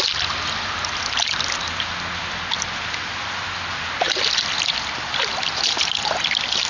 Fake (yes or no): no